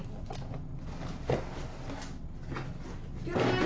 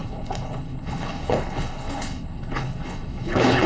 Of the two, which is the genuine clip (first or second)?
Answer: first